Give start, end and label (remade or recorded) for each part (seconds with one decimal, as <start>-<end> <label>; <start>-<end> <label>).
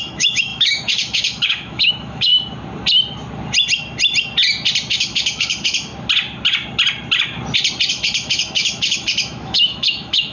0.0-2.3 remade; 2.3-4.9 recorded; 4.9-5.9 remade; 5.9-7.9 recorded; 7.9-10.3 remade